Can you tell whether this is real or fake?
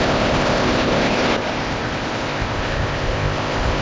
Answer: fake